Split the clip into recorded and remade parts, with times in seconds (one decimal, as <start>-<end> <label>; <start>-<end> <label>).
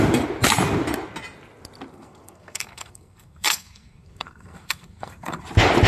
0.0-1.9 recorded; 1.9-5.4 remade; 5.4-5.9 recorded